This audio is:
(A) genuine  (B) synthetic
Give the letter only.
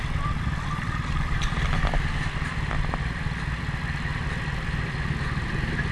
A